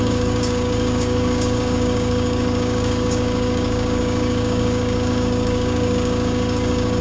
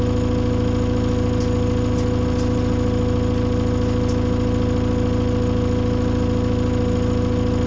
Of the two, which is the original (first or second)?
second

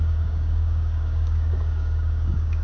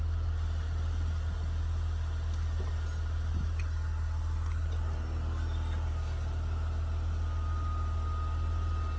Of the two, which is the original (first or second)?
second